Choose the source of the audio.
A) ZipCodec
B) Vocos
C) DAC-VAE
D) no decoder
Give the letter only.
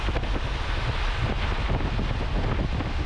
D